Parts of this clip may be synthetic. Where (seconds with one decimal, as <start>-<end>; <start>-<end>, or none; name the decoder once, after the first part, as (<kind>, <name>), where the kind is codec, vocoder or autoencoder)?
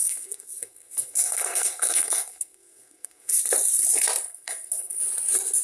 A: 0.0-3.4 (codec, SNAC); 4.3-5.0